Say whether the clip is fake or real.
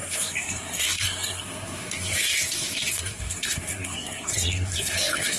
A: fake